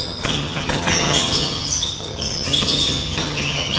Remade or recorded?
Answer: remade